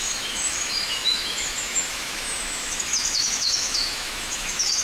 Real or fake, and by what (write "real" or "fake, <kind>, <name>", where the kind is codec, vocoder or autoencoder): fake, autoencoder, DAC-VAE